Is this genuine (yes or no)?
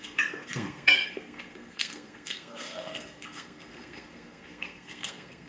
no